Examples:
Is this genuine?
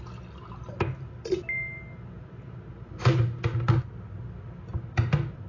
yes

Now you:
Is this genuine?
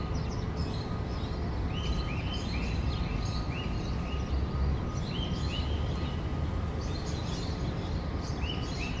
yes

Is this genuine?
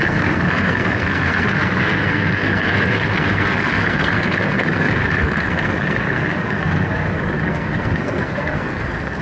no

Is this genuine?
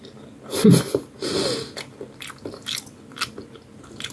yes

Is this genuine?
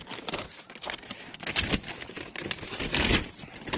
yes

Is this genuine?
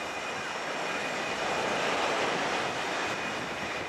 yes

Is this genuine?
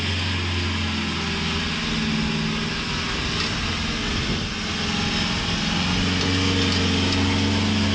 yes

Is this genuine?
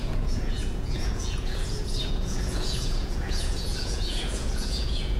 no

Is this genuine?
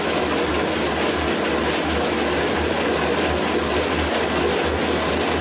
yes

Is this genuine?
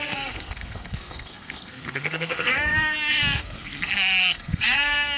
no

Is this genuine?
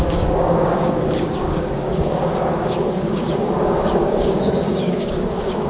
no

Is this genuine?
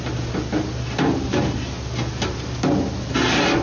yes